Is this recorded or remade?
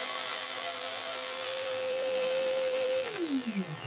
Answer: remade